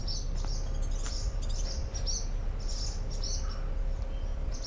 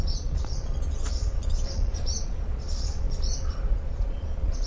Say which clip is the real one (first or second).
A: first